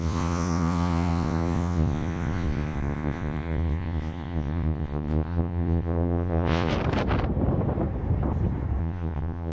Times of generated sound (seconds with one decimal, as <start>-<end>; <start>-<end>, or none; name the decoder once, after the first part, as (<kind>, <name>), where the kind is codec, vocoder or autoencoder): 0.0-6.7 (vocoder, Vocos); 8.8-9.5

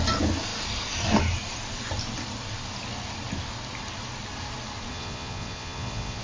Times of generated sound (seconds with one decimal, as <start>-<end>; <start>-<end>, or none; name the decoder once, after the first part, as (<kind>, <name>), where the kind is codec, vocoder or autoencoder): 4.9-6.2 (vocoder, Vocos)

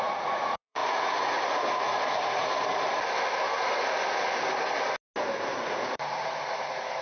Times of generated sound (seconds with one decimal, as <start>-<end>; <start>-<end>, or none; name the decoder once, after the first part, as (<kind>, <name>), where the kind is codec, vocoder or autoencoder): 0.0-1.9 (vocoder, Vocos); 5.6-7.0

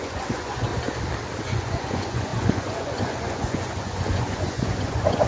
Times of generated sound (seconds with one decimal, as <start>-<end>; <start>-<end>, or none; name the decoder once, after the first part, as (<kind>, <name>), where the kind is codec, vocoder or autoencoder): 0.0-0.7 (vocoder, Vocos); 1.4-5.3

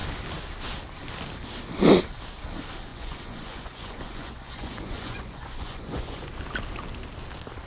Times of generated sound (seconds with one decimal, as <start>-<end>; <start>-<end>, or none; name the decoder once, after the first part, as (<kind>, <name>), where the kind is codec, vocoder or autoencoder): 2.9-6.3 (vocoder, Vocos)